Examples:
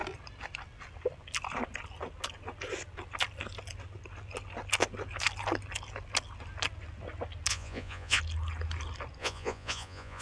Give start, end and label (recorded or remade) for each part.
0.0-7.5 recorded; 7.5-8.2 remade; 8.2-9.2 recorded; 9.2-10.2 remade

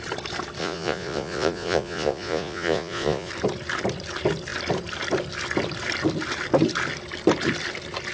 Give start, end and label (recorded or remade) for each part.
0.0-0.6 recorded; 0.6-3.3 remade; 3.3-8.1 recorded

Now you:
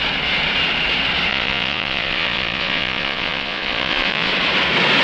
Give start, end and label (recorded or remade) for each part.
0.0-1.3 recorded; 1.3-4.3 remade; 4.3-5.0 recorded

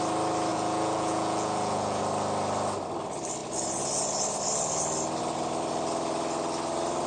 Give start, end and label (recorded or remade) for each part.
0.0-0.5 recorded; 0.5-2.0 remade; 2.0-7.1 recorded

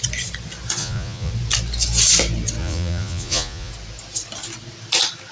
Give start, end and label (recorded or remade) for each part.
0.0-0.8 recorded; 0.8-1.3 remade; 1.3-2.6 recorded; 2.6-3.7 remade; 3.7-5.3 recorded

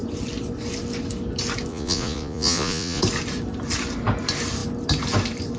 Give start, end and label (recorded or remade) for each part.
0.0-1.7 recorded; 1.7-3.0 remade; 3.0-5.6 recorded